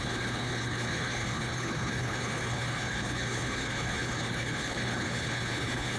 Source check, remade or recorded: remade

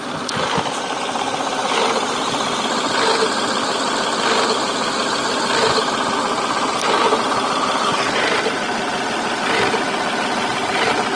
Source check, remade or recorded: recorded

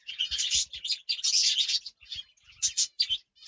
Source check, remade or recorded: recorded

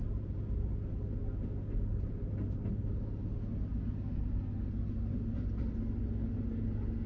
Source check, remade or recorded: recorded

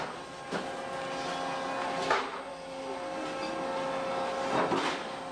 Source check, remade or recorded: recorded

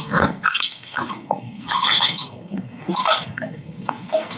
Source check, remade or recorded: remade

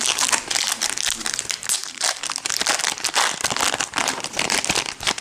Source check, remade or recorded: recorded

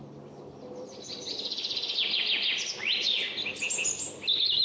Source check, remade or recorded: recorded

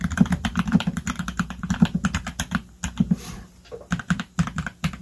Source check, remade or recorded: recorded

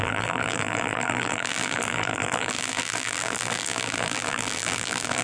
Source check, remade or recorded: remade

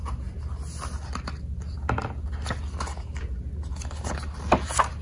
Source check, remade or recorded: recorded